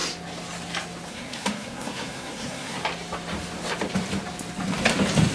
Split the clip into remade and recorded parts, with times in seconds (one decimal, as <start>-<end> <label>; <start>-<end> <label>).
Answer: 0.0-1.1 recorded; 1.1-2.8 remade; 2.8-5.3 recorded